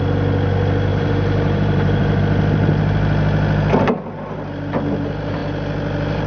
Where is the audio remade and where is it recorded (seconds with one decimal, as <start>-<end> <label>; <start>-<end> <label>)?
0.0-0.9 recorded; 0.9-2.2 remade; 2.2-6.3 recorded